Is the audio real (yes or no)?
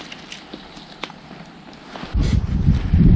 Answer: yes